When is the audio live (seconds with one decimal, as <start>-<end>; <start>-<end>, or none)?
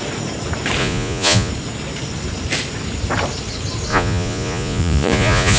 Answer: 0.0-0.8; 1.5-3.9